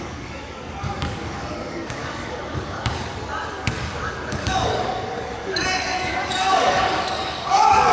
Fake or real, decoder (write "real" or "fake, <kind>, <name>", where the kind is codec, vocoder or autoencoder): fake, codec, DAC